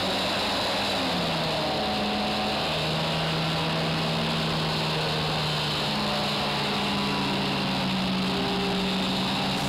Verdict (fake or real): real